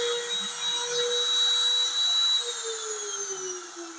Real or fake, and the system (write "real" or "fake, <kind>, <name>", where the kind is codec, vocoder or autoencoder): real